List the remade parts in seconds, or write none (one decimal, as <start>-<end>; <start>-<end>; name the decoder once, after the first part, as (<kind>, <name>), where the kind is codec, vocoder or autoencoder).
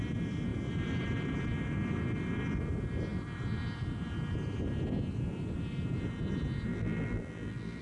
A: 6.7-7.8 (vocoder, BigVGAN v2)